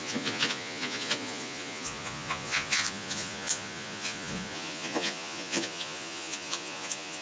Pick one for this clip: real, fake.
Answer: fake